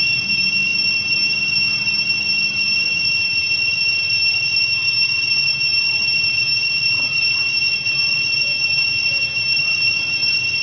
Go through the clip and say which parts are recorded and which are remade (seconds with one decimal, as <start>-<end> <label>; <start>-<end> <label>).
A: 0.0-10.6 recorded